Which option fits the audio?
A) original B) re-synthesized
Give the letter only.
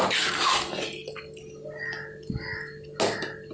A